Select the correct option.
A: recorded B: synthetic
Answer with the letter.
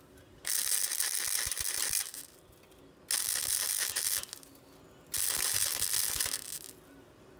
A